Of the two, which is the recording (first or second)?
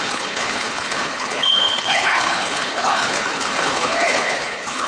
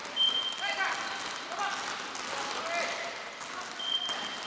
second